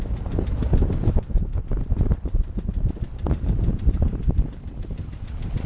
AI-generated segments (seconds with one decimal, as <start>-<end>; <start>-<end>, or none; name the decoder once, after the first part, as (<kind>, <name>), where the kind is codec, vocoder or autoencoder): 0.6-4.0 (vocoder, BigVGAN v2)